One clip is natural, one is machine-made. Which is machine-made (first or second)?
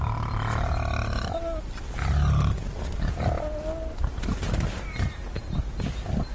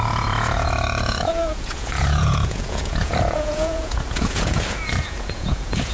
second